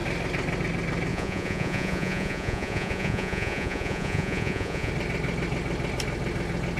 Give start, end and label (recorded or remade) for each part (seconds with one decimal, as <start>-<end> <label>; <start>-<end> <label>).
0.0-1.1 recorded; 1.1-4.9 remade; 4.9-6.8 recorded